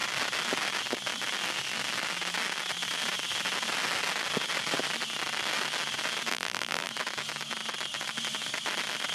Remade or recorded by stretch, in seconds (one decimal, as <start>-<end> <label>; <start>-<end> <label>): 0.0-6.3 recorded; 6.3-6.9 remade; 6.9-9.1 recorded